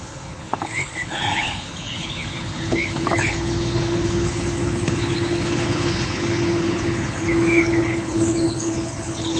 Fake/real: fake